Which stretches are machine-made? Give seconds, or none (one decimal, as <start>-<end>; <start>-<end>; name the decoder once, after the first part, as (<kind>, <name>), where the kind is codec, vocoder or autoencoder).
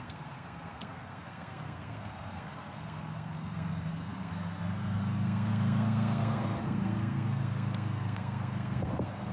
0.0-9.3 (codec, SNAC)